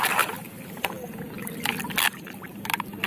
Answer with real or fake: real